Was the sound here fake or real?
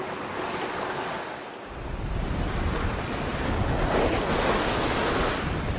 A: real